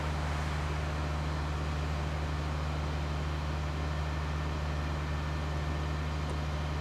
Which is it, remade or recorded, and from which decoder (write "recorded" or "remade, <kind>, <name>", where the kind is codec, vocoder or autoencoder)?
recorded